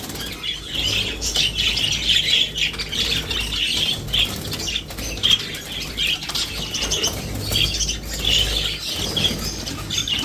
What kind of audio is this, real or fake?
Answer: real